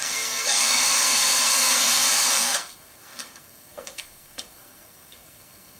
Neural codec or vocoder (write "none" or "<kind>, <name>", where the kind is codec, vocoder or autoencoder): codec, SNAC